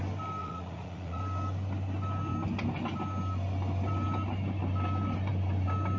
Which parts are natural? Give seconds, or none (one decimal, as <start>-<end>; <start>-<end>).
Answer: 0.0-0.4; 1.2-6.0